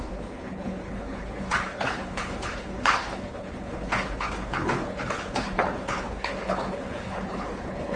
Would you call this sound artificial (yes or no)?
yes